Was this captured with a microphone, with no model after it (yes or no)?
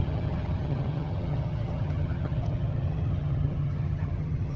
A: no